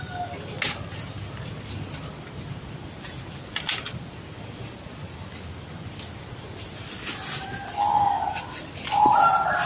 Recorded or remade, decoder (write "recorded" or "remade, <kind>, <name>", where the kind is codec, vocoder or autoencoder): recorded